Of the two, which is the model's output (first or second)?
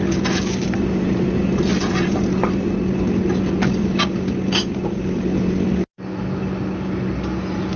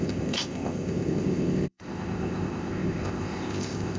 second